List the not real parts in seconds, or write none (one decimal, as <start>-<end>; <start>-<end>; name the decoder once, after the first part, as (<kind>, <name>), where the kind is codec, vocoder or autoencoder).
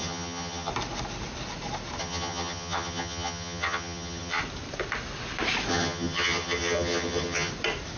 0.0-0.7 (vocoder, HiFi-GAN); 2.0-4.4; 5.7-7.5